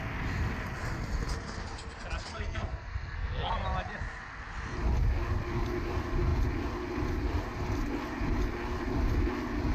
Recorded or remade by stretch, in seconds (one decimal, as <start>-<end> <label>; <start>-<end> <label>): 0.0-2.3 recorded; 2.3-3.5 remade; 3.5-9.7 recorded